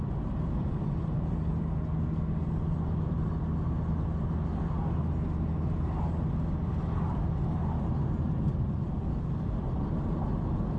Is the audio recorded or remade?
recorded